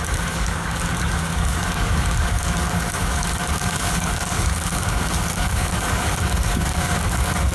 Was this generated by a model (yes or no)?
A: yes